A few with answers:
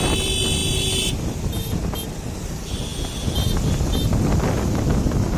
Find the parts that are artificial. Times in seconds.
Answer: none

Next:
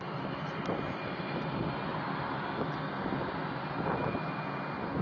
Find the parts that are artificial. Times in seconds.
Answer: 0.0-1.9 (vocoder, BigVGAN v2)

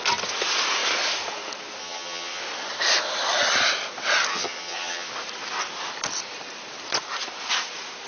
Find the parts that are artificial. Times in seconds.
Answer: 1.8-2.4 (vocoder, HiFi-GAN); 4.3-5.1

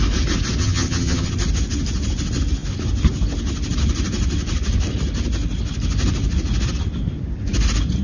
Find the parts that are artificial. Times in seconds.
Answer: 0.6-1.3 (vocoder, HiFi-GAN)

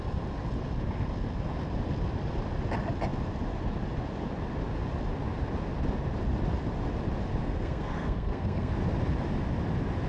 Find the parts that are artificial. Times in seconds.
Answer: 7.4-8.7 (codec, SNAC)